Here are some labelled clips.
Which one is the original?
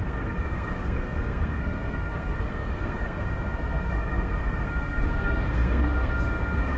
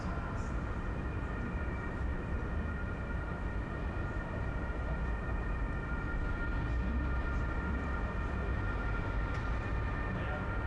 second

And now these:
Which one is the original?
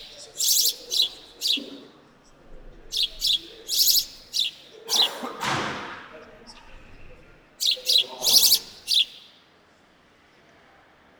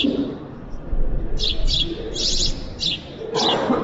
first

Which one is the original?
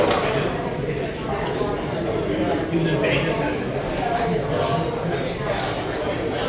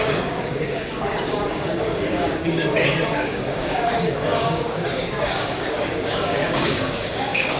first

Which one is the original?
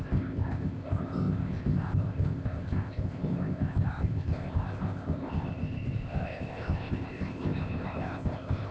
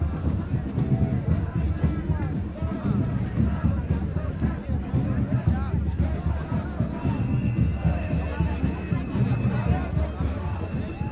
second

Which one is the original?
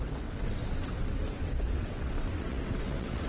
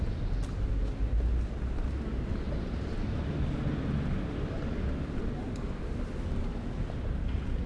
second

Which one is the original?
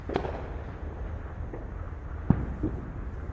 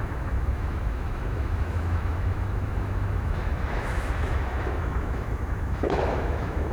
first